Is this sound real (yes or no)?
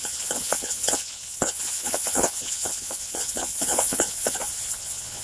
no